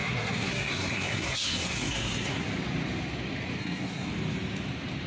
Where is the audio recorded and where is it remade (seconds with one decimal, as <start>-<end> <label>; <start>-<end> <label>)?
0.0-2.5 remade; 2.5-3.6 recorded; 3.6-4.1 remade; 4.1-5.1 recorded